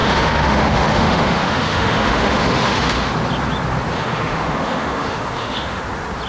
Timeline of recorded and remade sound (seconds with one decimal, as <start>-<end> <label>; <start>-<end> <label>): 0.0-3.1 remade; 3.1-3.9 recorded; 3.9-5.8 remade; 5.8-6.3 recorded